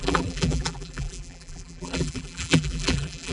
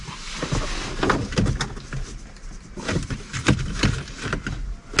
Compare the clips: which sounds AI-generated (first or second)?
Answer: first